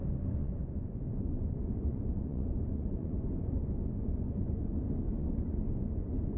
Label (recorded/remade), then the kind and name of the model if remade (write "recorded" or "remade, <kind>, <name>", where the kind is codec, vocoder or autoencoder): remade, vocoder, Vocos